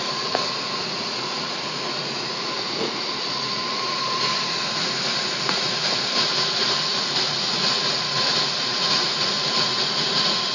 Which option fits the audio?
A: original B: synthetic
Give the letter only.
B